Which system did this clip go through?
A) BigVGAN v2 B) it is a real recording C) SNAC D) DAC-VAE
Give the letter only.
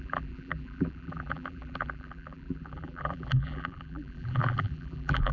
A